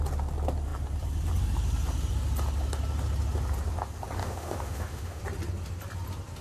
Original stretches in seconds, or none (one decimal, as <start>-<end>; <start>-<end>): 0.0-4.2; 5.2-6.4